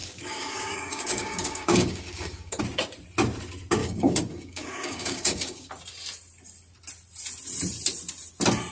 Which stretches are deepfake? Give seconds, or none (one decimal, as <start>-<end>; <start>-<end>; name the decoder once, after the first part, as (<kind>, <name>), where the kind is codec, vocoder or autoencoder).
0.0-2.6 (codec, DAC); 3.8-5.7